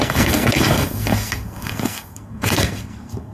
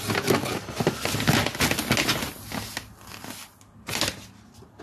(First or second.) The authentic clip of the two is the second